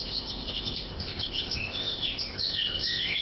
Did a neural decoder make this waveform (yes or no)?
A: yes